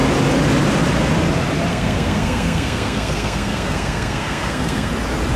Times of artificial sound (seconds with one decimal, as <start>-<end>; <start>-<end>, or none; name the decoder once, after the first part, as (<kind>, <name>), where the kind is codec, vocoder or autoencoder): 1.7-4.9 (codec, SNAC)